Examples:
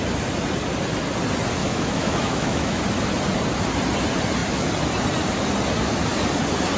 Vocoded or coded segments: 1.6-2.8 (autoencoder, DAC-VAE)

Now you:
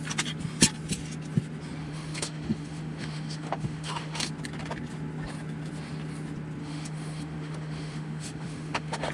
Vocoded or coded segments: 1.8-4.3 (autoencoder, DAC-VAE); 6.6-9.1

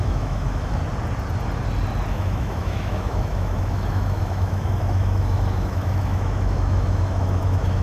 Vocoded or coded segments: 0.0-0.8 (autoencoder, DAC-VAE); 2.1-7.8

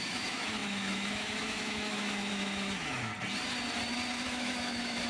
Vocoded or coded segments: 0.0-3.1 (autoencoder, DAC-VAE); 4.2-5.1

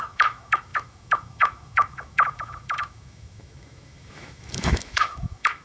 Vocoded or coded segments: 0.0-5.6 (autoencoder, DAC-VAE)